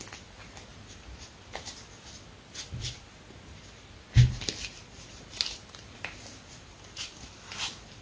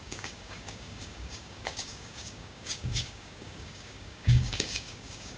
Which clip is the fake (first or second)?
second